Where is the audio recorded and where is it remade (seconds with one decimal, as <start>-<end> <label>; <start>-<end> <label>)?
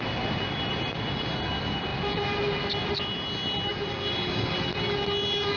0.0-5.6 recorded